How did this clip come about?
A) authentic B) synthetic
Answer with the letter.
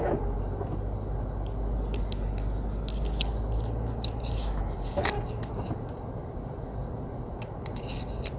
A